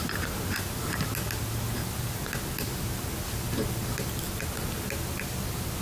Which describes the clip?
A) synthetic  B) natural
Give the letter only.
B